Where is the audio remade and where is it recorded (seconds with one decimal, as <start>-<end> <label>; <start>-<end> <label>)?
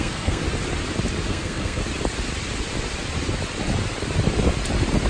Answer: 0.0-0.4 remade; 0.4-1.3 recorded; 1.3-1.8 remade; 1.8-5.1 recorded